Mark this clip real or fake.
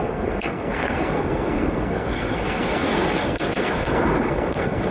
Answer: fake